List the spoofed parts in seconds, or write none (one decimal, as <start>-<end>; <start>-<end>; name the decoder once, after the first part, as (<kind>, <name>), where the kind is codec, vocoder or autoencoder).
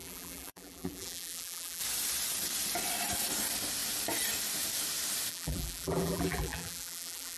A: 0.0-1.8 (vocoder, BigVGAN v2); 5.3-7.4